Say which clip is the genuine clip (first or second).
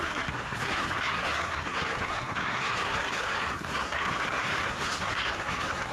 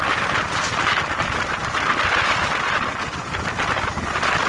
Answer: second